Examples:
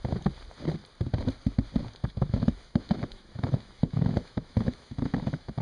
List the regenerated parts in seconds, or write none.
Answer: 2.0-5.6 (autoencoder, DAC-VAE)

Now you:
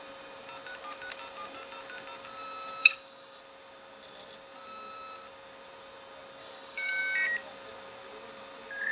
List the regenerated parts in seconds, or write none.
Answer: 2.8-3.4 (codec, DAC); 6.4-7.0

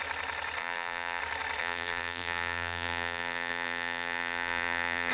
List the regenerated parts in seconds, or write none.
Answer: 0.6-1.2 (vocoder, BigVGAN v2); 1.6-5.1

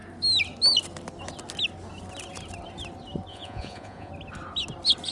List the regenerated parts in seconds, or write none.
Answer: 3.3-4.1 (vocoder, Vocos)

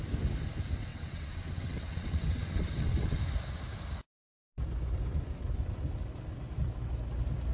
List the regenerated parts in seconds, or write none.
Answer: 0.9-3.2 (vocoder, WaveNeXt)

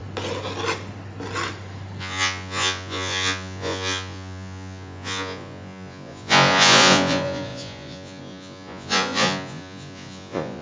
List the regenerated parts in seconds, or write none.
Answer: 2.0-10.6 (vocoder, Vocos)